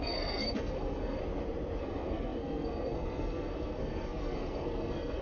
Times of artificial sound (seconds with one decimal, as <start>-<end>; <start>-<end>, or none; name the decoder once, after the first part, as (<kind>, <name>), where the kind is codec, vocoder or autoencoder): 0.0-1.2 (codec, SNAC); 1.8-5.2